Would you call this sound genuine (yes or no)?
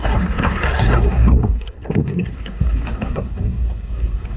no